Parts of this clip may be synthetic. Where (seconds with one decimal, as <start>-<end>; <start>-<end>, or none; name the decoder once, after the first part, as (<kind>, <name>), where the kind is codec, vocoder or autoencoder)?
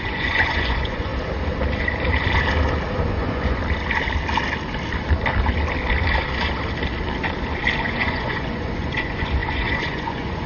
0.0-1.1 (vocoder, Vocos); 3.1-3.6; 7.8-10.5